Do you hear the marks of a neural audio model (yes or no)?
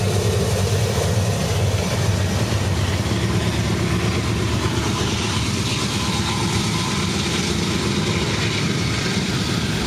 no